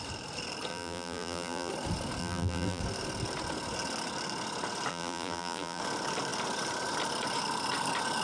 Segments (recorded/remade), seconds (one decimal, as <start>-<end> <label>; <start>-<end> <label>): 0.0-0.7 recorded; 0.7-1.7 remade; 1.7-2.2 recorded; 2.2-2.8 remade; 2.8-4.9 recorded; 4.9-5.8 remade; 5.8-8.2 recorded